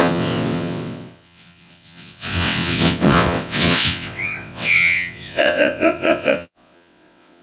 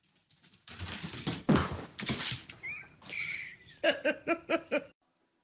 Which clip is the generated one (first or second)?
first